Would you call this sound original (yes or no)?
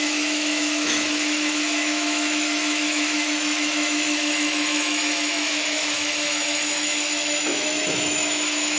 no